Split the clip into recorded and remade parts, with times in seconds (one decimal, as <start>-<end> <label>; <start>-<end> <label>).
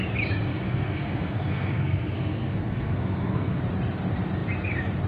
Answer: 0.0-0.5 recorded; 0.5-3.6 remade; 3.6-5.1 recorded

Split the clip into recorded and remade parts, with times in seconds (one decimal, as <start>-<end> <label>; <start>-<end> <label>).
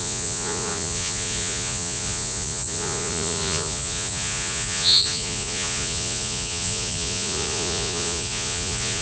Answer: 0.0-9.0 remade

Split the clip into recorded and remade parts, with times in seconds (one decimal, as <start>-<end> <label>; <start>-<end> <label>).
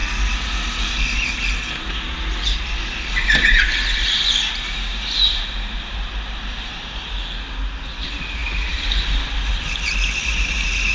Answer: 0.0-4.9 recorded; 4.9-7.0 remade; 7.0-10.9 recorded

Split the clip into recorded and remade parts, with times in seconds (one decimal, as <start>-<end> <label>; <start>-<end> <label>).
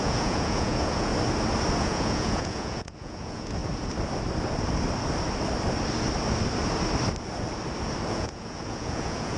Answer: 0.0-1.1 remade; 1.1-1.8 recorded; 1.8-3.6 remade; 3.6-8.1 recorded; 8.1-9.4 remade